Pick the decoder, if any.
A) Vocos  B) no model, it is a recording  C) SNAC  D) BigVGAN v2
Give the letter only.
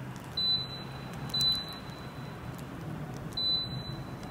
B